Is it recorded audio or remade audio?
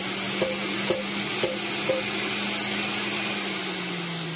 recorded